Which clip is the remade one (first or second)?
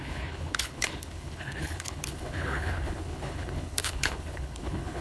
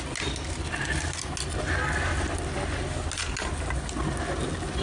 first